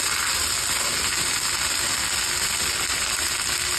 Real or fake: real